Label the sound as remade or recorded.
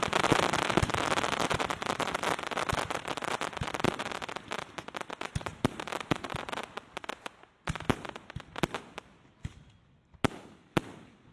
recorded